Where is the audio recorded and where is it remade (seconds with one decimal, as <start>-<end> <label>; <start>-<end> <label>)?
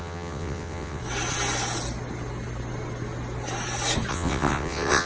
0.0-1.0 remade; 1.0-4.1 recorded; 4.1-5.1 remade